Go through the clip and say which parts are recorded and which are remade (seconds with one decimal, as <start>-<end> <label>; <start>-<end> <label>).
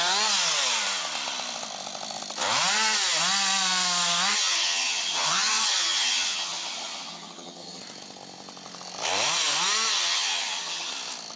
0.0-4.3 recorded; 4.3-7.8 remade; 7.8-9.9 recorded; 9.9-10.9 remade; 10.9-11.4 recorded